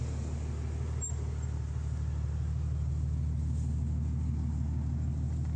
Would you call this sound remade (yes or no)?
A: no